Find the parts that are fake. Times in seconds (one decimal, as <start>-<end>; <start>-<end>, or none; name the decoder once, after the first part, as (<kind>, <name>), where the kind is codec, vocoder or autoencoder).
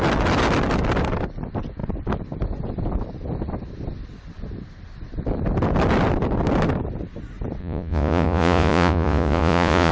7.6-9.9 (vocoder, Vocos)